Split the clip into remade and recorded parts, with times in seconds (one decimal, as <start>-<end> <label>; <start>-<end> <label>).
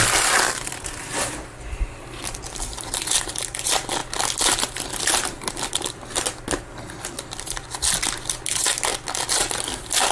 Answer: 0.0-4.0 remade; 4.0-4.6 recorded; 4.6-8.9 remade; 8.9-9.7 recorded; 9.7-10.1 remade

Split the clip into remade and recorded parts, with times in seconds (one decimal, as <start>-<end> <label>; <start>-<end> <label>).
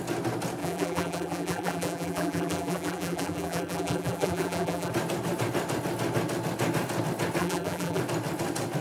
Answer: 0.0-0.6 recorded; 0.6-4.9 remade; 4.9-7.4 recorded; 7.4-8.0 remade; 8.0-8.8 recorded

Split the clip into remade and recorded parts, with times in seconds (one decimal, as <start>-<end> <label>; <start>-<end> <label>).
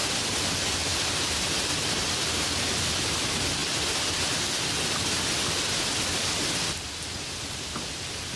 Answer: 0.0-8.4 recorded